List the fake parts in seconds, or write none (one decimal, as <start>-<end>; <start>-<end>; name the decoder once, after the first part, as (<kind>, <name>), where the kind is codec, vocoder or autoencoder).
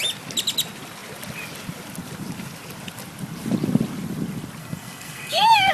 4.6-5.7 (codec, SNAC)